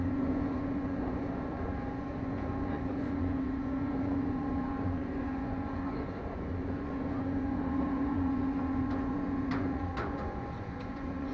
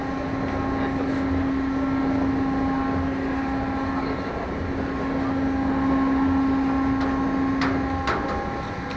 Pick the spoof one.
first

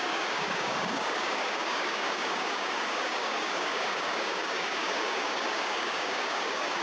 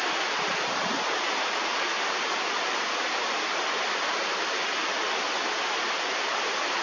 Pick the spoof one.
first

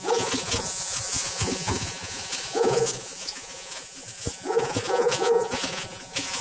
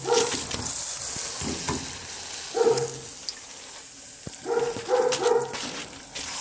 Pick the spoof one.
first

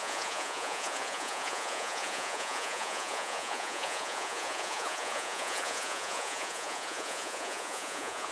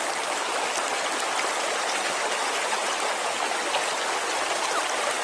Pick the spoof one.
first